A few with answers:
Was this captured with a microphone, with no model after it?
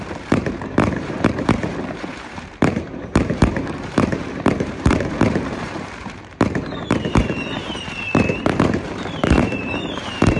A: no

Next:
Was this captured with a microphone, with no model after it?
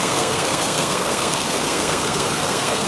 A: no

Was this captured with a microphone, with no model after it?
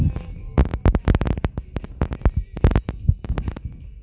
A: yes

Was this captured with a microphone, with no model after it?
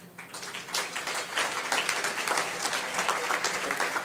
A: yes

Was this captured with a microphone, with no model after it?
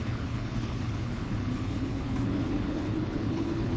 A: no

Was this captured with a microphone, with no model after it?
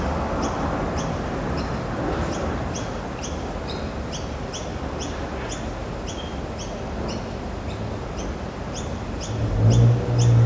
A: yes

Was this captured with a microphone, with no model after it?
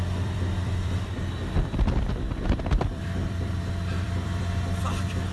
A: no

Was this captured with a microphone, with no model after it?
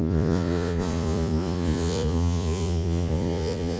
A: no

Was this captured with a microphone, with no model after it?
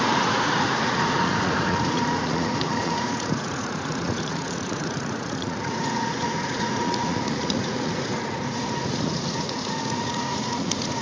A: no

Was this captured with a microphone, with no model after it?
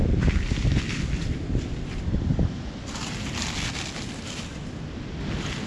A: yes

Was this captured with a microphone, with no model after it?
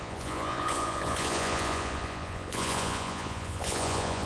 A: no